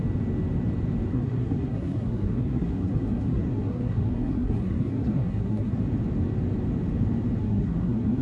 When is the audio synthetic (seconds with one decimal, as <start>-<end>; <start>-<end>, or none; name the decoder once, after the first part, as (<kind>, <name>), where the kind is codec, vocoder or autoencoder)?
1.1-5.8 (codec, SNAC); 7.4-8.2